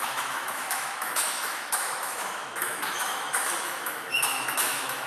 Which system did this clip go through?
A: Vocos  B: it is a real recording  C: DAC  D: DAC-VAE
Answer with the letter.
D